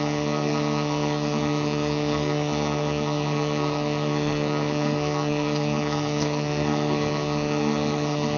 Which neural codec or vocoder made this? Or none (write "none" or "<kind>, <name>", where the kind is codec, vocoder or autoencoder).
codec, SNAC